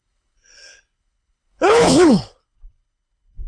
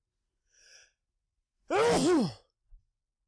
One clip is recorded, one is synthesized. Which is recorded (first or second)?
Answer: second